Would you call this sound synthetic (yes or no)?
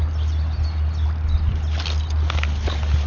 no